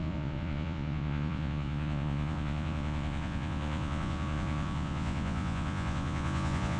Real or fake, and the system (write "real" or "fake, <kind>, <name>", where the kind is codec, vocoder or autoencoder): fake, vocoder, Vocos